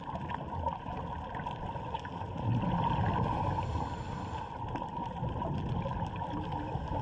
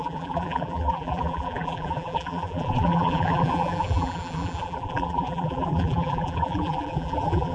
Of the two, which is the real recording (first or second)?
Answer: first